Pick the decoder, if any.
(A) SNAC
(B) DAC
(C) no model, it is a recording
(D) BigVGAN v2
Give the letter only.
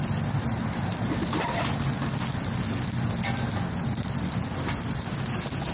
C